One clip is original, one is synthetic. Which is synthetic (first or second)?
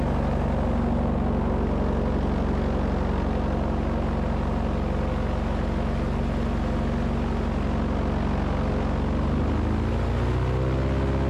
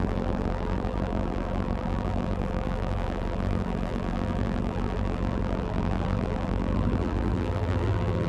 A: second